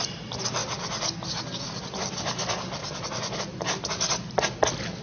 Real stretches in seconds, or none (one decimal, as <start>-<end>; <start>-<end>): 0.0-5.0